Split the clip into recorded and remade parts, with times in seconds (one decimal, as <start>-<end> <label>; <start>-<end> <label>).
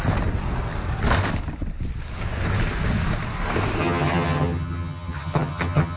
0.0-3.8 recorded; 3.8-6.0 remade